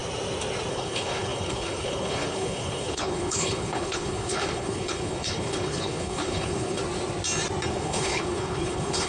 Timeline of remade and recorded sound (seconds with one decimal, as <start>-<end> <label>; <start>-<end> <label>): 0.0-0.7 recorded; 0.7-6.8 remade; 6.8-7.7 recorded; 7.7-9.1 remade